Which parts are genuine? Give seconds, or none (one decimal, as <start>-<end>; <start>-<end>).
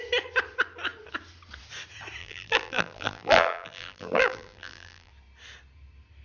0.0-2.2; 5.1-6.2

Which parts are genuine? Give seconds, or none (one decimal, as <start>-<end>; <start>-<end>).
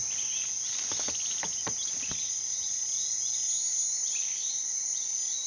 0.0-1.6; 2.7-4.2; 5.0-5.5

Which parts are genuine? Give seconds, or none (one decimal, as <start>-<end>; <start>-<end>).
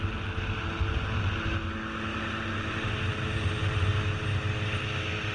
0.0-2.1; 3.9-5.3